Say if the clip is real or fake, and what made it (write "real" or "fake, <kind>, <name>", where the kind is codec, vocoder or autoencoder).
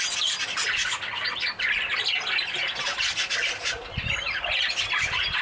real